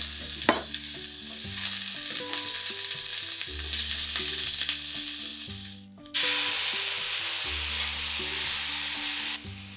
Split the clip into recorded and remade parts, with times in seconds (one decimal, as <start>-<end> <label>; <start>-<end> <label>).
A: 0.0-9.8 recorded